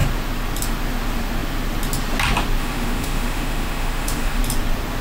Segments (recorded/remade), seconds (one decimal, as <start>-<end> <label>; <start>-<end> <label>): 0.0-2.6 recorded; 2.6-4.4 remade; 4.4-5.0 recorded